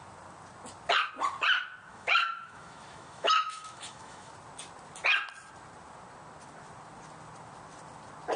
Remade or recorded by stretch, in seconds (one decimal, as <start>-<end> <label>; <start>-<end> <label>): 0.0-1.9 recorded; 1.9-4.3 remade; 4.3-8.4 recorded